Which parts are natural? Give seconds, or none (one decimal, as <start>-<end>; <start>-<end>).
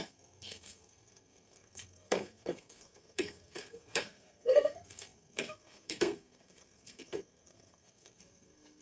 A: none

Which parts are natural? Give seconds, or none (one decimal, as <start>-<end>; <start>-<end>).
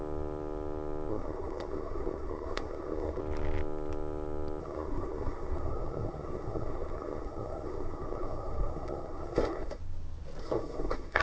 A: 0.0-1.1; 3.2-4.6; 9.8-10.4